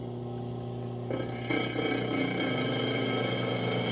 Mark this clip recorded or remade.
recorded